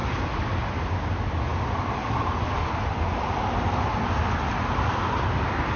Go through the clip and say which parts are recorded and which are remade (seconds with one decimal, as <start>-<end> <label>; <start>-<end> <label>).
0.0-5.8 recorded